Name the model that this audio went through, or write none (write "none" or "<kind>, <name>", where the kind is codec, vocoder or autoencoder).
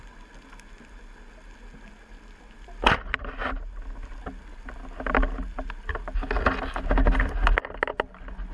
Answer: none